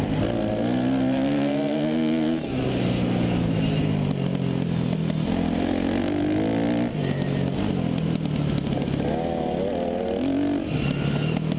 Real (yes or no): yes